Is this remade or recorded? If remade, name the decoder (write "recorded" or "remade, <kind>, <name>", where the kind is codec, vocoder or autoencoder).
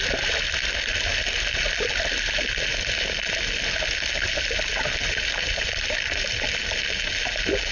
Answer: recorded